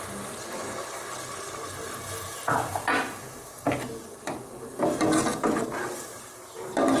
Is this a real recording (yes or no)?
yes